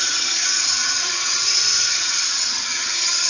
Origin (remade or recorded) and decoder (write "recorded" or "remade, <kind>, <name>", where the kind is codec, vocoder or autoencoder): remade, vocoder, HiFi-GAN